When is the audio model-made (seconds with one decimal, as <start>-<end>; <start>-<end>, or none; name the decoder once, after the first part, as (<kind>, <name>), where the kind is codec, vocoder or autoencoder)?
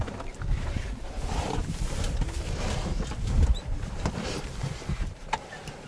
0.0-5.9 (vocoder, BigVGAN v2)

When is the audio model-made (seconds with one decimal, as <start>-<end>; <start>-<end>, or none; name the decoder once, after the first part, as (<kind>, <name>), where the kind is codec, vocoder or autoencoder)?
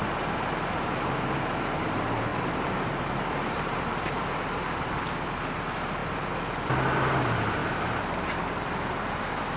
2.3-4.3 (vocoder, BigVGAN v2); 7.6-9.2